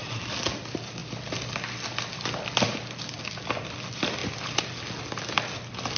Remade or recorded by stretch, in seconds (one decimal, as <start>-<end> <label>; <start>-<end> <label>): 0.0-6.0 recorded